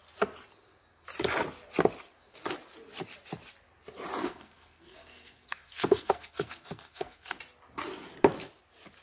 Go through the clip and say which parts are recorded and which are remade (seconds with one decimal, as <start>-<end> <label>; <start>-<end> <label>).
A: 0.0-4.2 recorded; 4.2-7.4 remade; 7.4-9.0 recorded